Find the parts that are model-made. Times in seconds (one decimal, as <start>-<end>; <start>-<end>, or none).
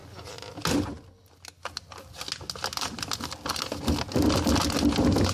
none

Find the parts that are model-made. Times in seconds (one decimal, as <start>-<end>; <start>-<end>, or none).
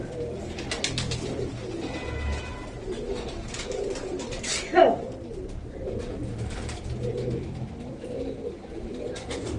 none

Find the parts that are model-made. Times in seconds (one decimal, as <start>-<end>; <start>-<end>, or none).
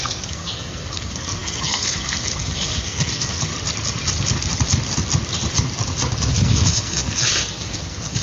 0.0-3.5; 6.3-8.2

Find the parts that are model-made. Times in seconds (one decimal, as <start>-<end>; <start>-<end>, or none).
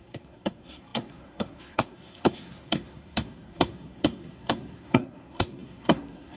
0.0-6.4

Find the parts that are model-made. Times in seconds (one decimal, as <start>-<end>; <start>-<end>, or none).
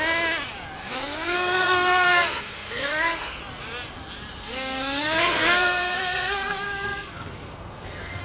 0.8-3.4; 4.4-8.2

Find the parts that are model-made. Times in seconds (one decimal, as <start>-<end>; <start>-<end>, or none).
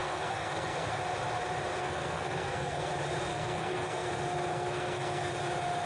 0.0-1.0; 1.8-2.9; 3.3-4.1; 4.5-5.3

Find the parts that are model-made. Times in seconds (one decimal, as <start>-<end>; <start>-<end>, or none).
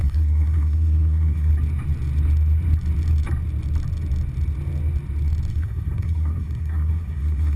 0.0-1.5; 5.5-7.6